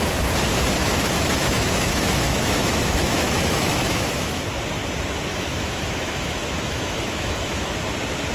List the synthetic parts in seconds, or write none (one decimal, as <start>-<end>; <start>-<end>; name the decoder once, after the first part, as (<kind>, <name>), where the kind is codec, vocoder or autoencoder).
0.8-4.4 (autoencoder, DAC-VAE); 5.3-7.7